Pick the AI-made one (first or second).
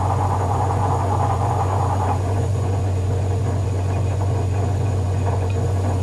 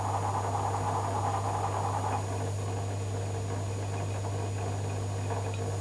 first